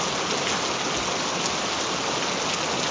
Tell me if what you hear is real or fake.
real